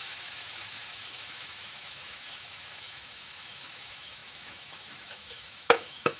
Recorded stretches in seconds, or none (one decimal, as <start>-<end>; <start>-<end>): none